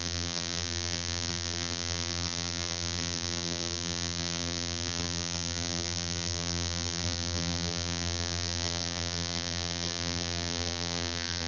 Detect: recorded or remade remade